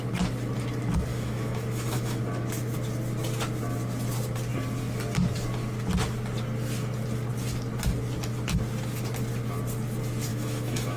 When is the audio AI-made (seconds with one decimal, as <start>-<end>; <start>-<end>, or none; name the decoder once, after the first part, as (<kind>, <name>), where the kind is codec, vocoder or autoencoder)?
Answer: 1.1-2.2 (autoencoder, DAC-VAE); 10.3-11.0